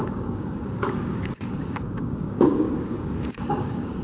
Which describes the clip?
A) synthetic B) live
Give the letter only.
A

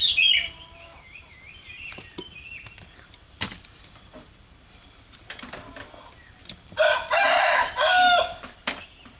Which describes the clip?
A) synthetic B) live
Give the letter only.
B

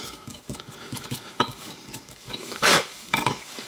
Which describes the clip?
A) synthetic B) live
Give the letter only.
A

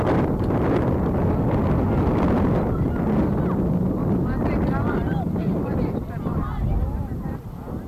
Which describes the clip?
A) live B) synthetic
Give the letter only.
A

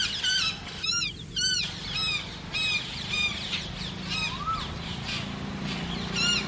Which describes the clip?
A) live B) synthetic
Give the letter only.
A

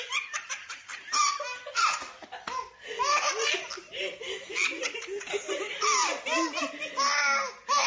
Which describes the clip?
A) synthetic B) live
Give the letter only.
B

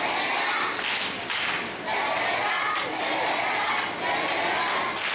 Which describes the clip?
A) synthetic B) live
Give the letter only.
B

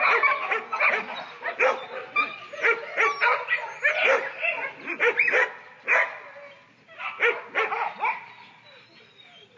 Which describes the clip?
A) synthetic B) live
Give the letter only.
B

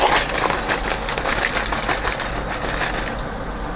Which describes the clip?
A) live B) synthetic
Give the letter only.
A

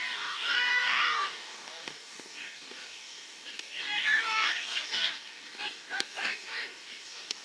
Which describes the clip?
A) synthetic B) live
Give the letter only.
A